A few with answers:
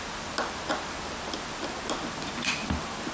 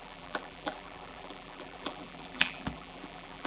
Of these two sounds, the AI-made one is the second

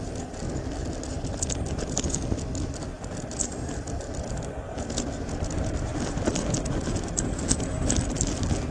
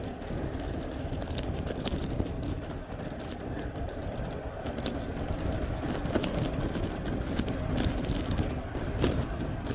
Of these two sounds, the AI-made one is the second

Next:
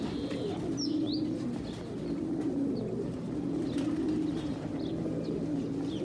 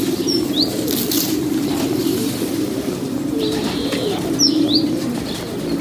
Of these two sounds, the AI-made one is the second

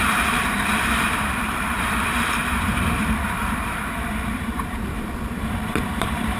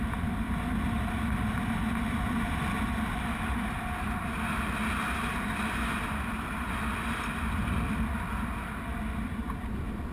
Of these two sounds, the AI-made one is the first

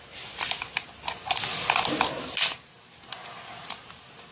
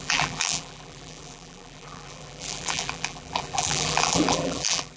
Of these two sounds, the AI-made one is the second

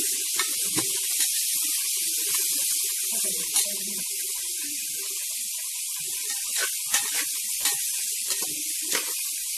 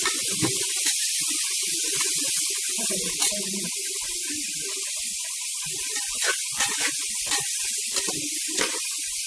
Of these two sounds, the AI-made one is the second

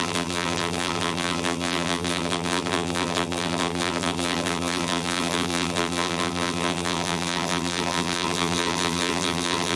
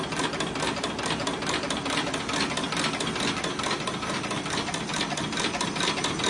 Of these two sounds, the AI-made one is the first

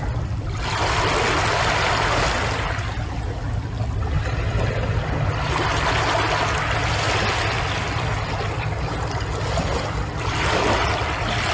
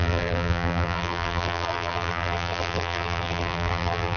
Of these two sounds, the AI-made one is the second